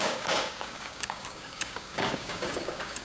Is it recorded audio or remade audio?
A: remade